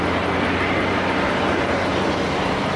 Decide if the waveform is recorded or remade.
recorded